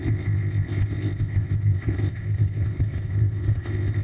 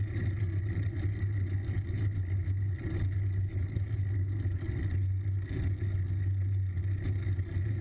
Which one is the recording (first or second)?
second